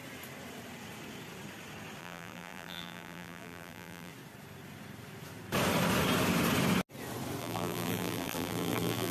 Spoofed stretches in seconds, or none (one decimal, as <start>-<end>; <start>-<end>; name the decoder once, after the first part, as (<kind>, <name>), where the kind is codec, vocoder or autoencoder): 2.0-4.1 (vocoder, BigVGAN v2); 7.4-9.1